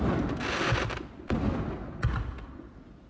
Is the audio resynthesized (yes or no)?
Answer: no